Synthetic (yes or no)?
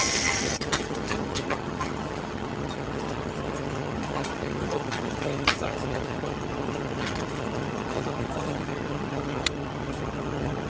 yes